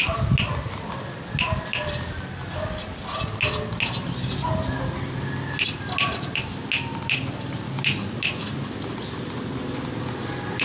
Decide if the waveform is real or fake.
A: real